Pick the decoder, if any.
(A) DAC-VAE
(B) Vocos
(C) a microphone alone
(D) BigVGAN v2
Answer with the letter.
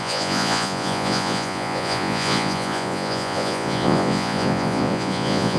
B